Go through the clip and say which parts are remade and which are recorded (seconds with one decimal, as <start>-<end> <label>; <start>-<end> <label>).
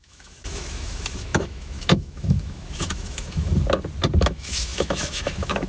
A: 0.0-3.5 remade; 3.5-4.2 recorded; 4.2-5.7 remade